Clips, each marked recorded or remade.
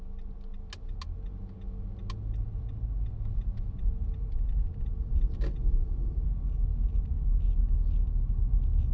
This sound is recorded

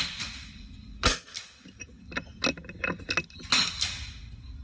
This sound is recorded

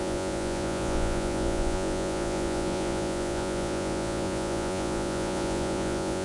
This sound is remade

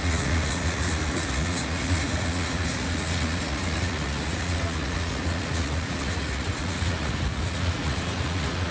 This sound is remade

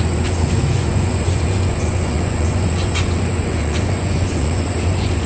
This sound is remade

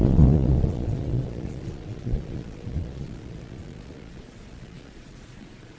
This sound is remade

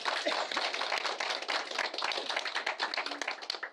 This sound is recorded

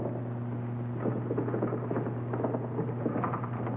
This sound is recorded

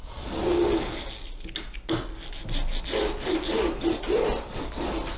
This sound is recorded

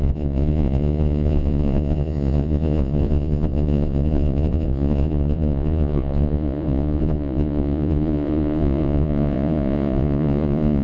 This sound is remade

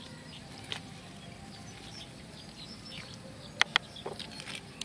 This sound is recorded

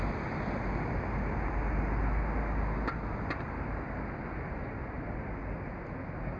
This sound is recorded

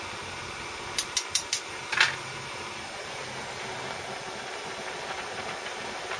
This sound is recorded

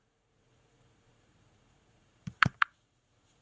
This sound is remade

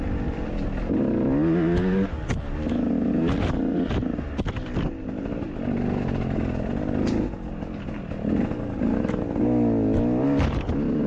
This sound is recorded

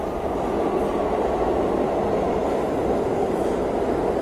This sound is recorded